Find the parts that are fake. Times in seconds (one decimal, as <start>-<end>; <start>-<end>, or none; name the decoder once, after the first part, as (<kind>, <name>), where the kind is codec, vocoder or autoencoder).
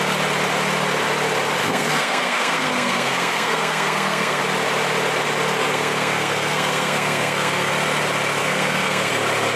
1.6-4.4 (codec, SNAC); 5.6-7.7; 8.4-9.1